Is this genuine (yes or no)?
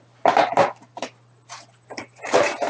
yes